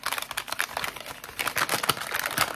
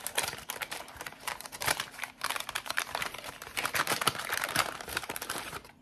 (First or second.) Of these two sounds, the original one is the first